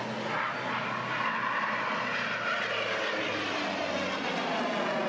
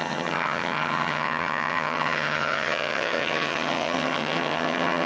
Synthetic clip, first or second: second